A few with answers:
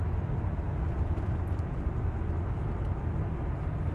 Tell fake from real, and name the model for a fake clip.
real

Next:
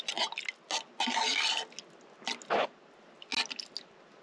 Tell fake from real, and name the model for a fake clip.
real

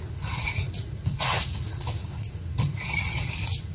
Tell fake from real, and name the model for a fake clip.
fake, vocoder, Vocos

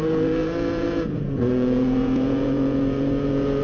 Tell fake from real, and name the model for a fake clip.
fake, vocoder, Vocos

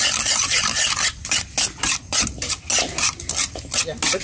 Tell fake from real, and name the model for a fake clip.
real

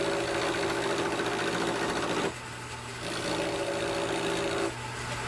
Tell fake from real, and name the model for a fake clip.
real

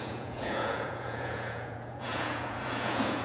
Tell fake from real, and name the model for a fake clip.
fake, vocoder, Vocos